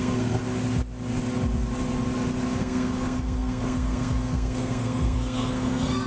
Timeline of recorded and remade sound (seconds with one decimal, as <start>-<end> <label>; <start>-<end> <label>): 0.0-0.4 remade; 0.4-2.6 recorded; 2.6-6.1 remade